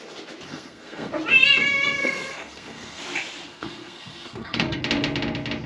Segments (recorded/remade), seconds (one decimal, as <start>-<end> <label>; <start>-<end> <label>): 0.0-0.5 recorded; 0.5-1.1 remade; 1.1-2.0 recorded; 2.0-3.0 remade; 3.0-3.5 recorded; 3.5-4.8 remade; 4.8-5.7 recorded